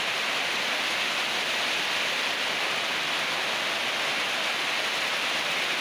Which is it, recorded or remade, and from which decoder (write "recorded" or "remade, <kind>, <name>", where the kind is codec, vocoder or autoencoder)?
recorded